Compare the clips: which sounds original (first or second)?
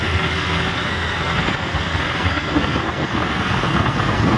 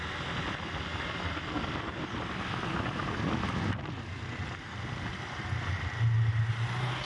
second